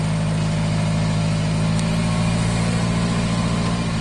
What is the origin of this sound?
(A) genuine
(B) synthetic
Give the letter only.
A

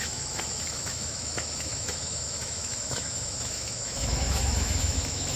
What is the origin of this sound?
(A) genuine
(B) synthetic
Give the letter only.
B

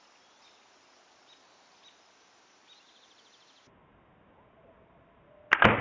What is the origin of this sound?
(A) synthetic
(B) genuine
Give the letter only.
B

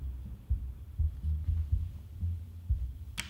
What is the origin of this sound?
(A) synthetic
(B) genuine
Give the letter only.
B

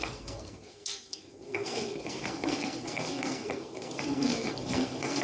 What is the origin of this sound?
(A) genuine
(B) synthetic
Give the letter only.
B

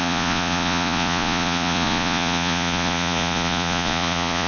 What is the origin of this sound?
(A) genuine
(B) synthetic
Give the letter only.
B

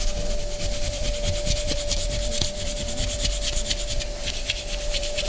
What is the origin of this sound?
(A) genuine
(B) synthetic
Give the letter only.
B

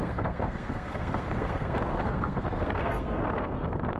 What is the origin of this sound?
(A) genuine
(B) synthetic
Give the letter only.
B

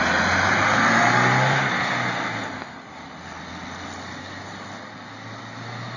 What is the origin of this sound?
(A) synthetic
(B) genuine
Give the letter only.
B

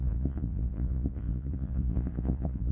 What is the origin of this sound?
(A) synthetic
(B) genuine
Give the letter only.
A